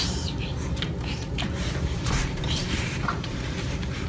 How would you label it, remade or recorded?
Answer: remade